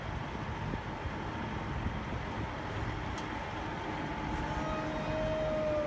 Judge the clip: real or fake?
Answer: real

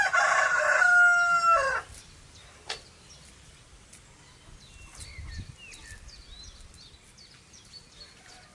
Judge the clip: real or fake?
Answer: real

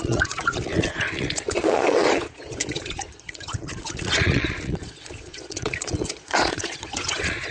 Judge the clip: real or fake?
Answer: fake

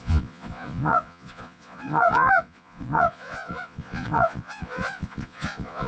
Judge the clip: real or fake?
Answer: fake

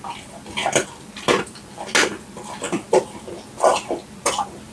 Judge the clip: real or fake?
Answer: real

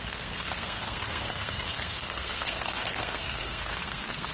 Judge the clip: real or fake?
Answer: fake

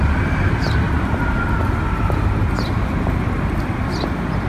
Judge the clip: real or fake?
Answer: real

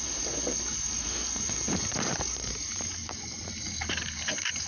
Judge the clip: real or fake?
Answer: fake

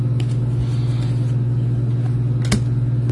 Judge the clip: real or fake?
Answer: real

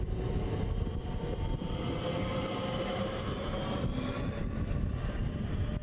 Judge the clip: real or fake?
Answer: real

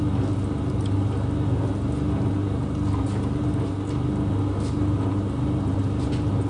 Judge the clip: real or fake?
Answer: real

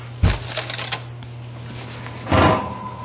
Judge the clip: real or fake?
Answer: real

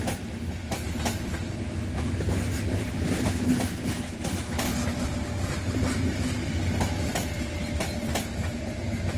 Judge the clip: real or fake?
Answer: real